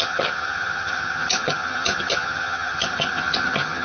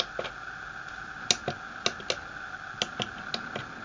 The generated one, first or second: first